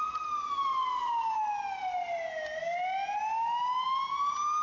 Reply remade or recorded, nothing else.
recorded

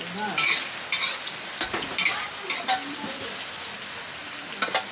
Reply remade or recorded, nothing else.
recorded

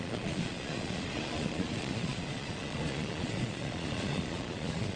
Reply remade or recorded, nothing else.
remade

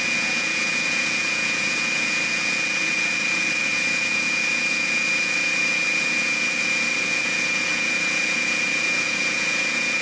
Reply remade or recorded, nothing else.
remade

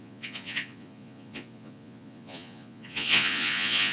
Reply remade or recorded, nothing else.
remade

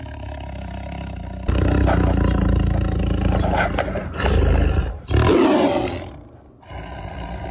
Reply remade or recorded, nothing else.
recorded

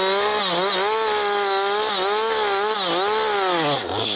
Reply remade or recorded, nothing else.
recorded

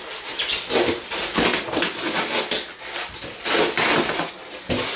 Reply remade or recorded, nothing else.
recorded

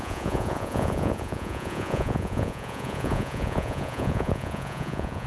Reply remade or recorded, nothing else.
remade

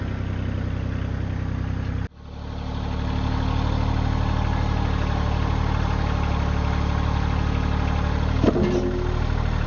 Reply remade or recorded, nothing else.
recorded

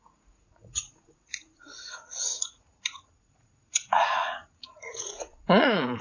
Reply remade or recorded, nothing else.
remade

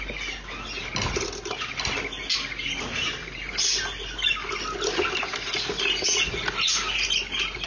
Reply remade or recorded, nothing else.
recorded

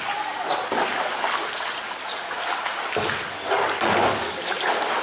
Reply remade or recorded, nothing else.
recorded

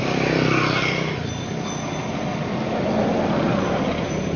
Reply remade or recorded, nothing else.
recorded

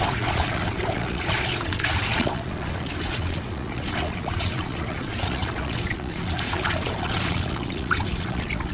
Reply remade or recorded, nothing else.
remade